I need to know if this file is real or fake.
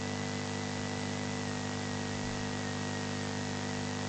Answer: real